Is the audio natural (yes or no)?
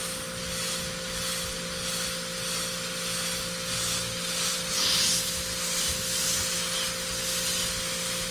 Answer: yes